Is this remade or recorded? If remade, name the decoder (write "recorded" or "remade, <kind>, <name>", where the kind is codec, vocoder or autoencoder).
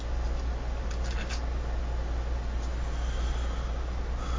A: recorded